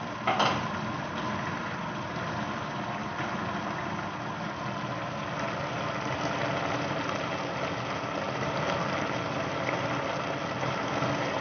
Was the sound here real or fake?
real